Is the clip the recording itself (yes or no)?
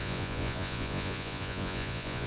no